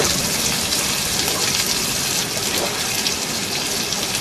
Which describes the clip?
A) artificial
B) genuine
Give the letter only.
B